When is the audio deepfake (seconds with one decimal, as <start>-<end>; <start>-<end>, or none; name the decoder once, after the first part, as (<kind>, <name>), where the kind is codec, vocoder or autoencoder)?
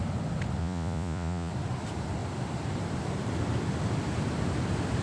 0.6-1.5 (vocoder, Vocos)